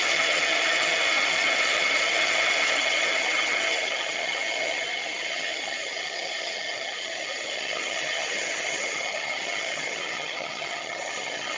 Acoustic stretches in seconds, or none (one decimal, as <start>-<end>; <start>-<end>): none

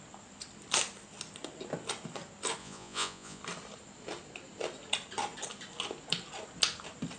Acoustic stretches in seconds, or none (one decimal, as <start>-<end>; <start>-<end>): 0.0-2.6; 3.4-7.2

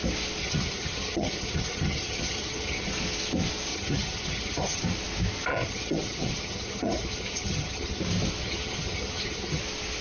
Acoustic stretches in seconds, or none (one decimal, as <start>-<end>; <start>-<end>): 0.0-0.4; 2.9-3.7; 4.8-5.5; 8.0-8.4; 9.6-10.0

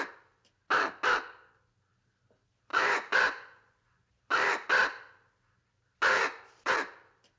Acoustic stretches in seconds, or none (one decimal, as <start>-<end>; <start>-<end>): 0.0-2.7; 4.1-7.4

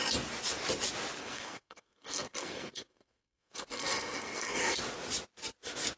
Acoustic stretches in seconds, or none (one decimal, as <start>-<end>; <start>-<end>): 0.0-1.2; 4.8-6.0

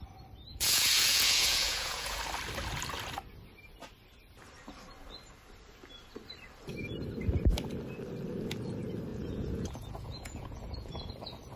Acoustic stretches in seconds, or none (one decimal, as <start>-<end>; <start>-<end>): 0.0-0.5; 2.2-9.1; 11.1-11.6

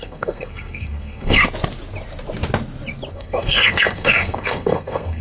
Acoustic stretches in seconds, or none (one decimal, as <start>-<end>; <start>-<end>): 1.4-3.1

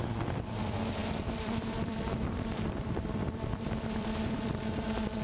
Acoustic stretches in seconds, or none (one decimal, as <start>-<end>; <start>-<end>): none